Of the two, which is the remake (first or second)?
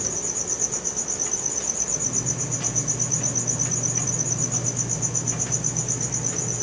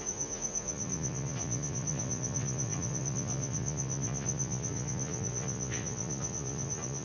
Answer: second